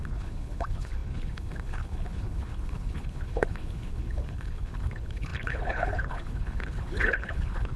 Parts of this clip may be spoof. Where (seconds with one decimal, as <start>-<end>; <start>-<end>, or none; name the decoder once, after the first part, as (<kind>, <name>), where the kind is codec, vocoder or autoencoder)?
0.0-7.8 (codec, HILCodec)